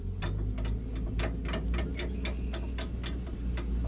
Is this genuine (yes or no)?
yes